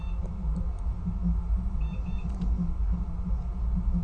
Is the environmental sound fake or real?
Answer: real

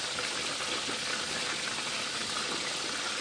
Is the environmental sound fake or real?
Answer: real